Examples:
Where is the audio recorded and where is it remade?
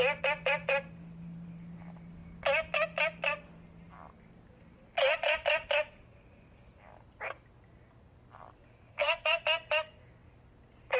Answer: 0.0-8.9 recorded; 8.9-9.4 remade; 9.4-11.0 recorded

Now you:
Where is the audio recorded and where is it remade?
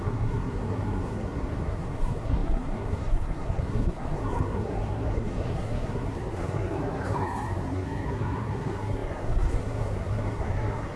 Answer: 0.0-11.0 remade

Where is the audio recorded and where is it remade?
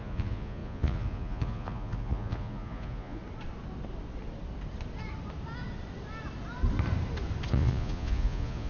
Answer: 0.0-3.2 remade; 3.2-7.5 recorded; 7.5-8.7 remade